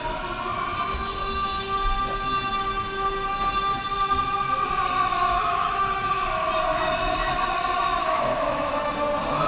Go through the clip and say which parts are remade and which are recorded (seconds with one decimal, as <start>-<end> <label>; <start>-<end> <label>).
0.0-5.1 recorded; 5.1-6.2 remade; 6.2-8.0 recorded; 8.0-8.9 remade; 8.9-9.5 recorded